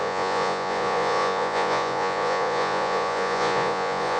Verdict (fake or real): fake